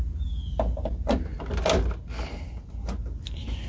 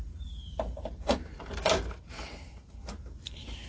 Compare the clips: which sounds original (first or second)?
first